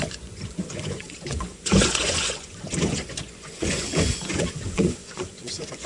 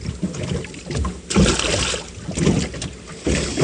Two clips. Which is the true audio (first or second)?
second